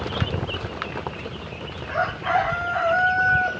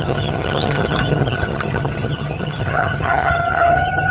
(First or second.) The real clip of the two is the first